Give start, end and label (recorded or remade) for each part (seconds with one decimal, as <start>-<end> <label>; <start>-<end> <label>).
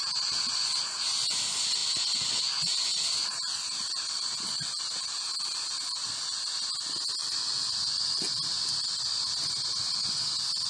0.0-7.2 recorded; 7.2-8.2 remade; 8.2-10.7 recorded